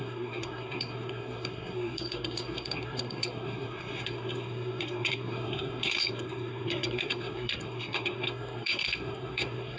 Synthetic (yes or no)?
yes